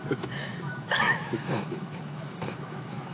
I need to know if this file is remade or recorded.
remade